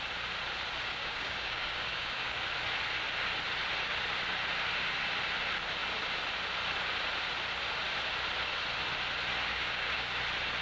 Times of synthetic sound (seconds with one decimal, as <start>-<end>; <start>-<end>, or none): 0.9-2.3; 9.5-10.1